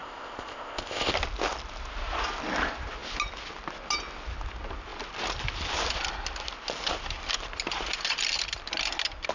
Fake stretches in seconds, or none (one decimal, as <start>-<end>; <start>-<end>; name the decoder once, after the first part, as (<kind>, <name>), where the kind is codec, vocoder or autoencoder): 0.0-1.1 (codec, ZipCodec)